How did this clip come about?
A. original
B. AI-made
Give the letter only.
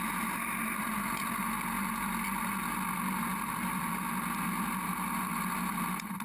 A